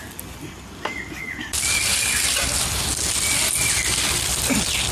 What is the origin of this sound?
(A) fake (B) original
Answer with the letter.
B